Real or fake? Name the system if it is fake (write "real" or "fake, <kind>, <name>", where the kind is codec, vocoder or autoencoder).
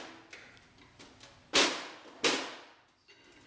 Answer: real